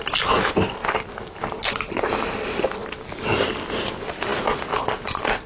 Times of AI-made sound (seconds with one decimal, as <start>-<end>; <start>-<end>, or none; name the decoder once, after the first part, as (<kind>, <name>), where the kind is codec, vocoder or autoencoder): none